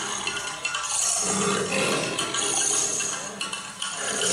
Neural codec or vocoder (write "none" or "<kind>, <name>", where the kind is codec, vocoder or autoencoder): none